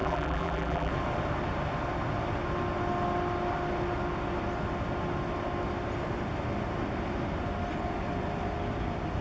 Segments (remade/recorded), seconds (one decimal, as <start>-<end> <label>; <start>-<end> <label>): 0.0-0.9 remade; 0.9-9.2 recorded